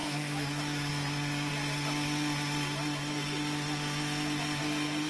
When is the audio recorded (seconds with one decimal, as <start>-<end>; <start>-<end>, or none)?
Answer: 0.9-5.1

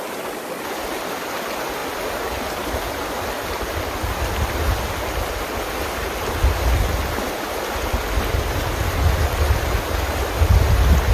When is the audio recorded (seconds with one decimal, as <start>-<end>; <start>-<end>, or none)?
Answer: 0.0-11.1

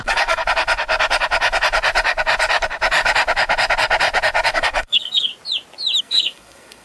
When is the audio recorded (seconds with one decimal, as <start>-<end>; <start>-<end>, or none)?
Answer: 0.4-4.5; 5.3-6.0

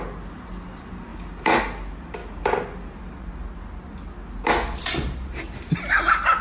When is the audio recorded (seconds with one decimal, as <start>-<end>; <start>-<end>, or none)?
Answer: 0.0-6.4

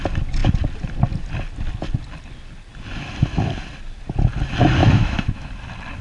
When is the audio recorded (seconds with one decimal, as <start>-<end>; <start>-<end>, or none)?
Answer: 0.0-4.8; 5.5-6.0

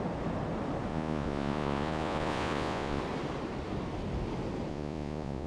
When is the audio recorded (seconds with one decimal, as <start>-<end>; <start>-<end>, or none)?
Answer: 0.0-0.9; 3.0-4.7